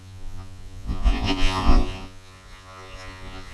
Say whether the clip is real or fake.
fake